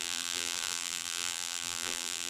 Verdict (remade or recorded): remade